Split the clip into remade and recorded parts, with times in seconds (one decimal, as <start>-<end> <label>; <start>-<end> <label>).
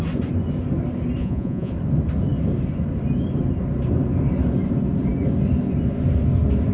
0.0-1.2 recorded; 1.2-1.7 remade; 1.7-6.7 recorded